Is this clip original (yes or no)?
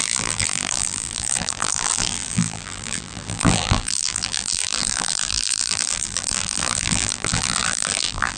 no